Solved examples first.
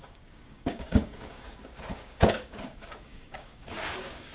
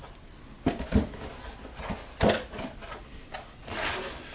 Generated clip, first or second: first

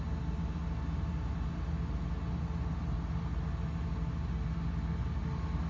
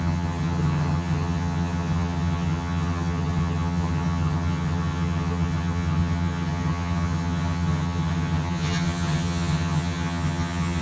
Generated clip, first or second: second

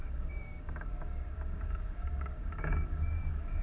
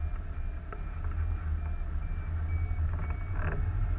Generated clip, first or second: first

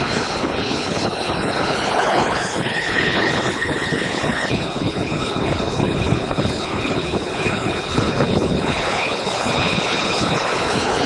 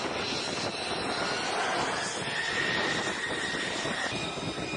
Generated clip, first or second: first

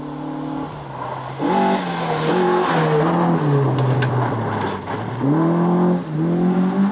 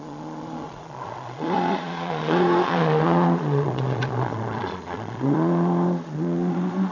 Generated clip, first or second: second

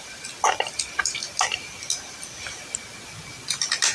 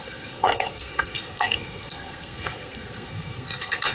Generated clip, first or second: second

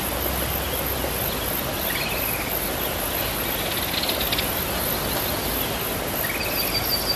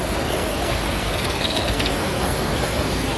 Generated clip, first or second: second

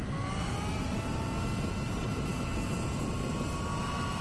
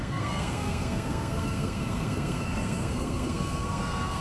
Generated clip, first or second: second